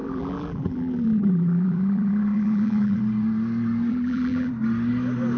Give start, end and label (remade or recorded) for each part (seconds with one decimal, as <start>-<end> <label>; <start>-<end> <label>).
0.0-3.0 remade; 3.0-3.9 recorded; 3.9-4.5 remade; 4.5-5.4 recorded